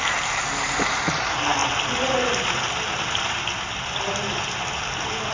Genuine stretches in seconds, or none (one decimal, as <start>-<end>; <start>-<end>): 0.0-5.3